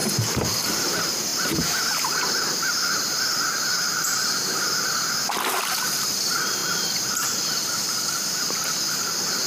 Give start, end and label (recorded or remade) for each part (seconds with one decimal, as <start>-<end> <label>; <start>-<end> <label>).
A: 0.0-0.7 recorded; 0.7-1.3 remade; 1.3-6.1 recorded; 6.1-9.5 remade